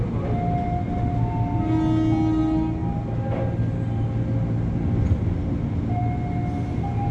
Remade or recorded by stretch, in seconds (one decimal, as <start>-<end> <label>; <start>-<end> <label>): 0.0-7.1 recorded

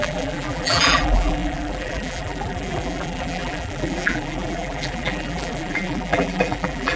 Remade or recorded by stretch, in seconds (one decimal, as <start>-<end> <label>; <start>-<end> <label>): 0.0-7.0 remade

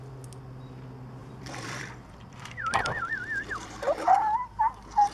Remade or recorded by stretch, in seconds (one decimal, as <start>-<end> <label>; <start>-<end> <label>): 0.0-1.2 recorded; 1.2-3.1 remade; 3.1-5.1 recorded

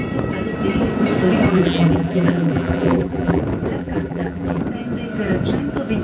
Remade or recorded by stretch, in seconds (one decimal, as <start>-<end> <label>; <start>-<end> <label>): 0.0-1.5 recorded; 1.5-3.4 remade; 3.4-3.8 recorded; 3.8-4.6 remade; 4.6-6.0 recorded

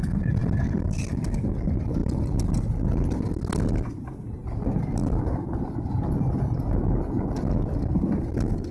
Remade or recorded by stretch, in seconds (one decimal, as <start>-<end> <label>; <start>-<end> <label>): 0.0-0.4 recorded; 0.4-1.1 remade; 1.1-5.0 recorded; 5.0-5.9 remade; 5.9-8.7 recorded

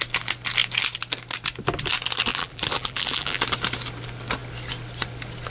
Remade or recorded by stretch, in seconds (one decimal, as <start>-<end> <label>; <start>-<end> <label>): 0.0-2.3 recorded; 2.3-3.4 remade; 3.4-5.5 recorded

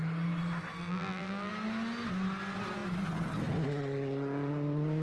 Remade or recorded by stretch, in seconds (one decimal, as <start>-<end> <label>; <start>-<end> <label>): 0.0-0.8 recorded; 0.8-1.5 remade; 1.5-5.0 recorded

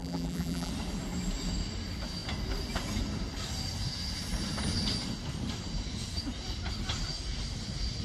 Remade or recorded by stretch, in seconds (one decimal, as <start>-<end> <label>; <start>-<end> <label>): 0.0-0.7 remade; 0.7-8.0 recorded